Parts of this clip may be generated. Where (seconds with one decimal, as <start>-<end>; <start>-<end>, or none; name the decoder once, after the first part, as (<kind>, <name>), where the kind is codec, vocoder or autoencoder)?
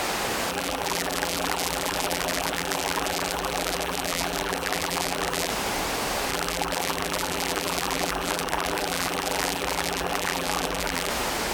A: 0.5-5.5 (vocoder, BigVGAN v2); 6.3-11.1